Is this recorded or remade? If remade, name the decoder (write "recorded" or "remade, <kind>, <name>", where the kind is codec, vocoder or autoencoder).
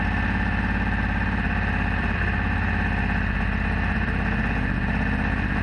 recorded